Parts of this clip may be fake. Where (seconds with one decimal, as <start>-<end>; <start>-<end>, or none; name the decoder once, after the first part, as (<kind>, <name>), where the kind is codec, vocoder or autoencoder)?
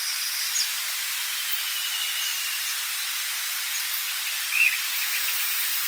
none